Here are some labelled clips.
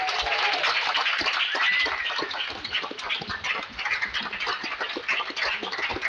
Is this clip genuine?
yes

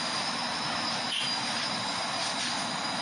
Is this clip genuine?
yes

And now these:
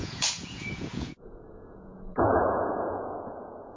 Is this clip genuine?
no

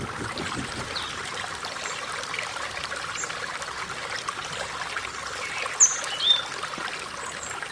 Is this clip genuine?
yes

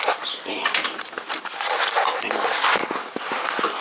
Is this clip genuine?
yes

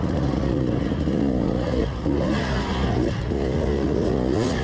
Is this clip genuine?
no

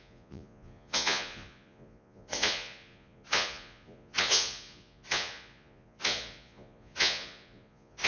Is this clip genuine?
no